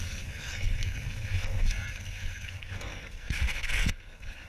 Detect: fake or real fake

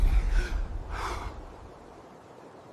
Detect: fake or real fake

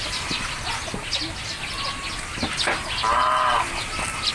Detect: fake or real real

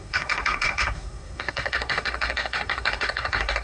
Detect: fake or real fake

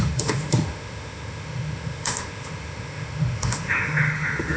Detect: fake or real fake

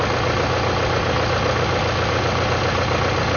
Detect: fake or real real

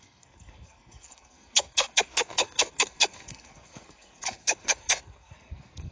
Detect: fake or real fake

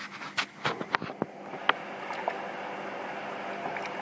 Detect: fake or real real